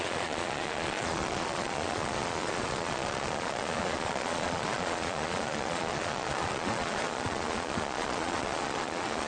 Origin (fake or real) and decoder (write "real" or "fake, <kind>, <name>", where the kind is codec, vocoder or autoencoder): fake, vocoder, Vocos